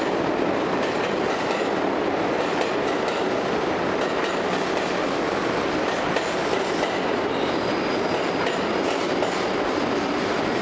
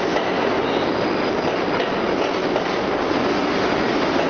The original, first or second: second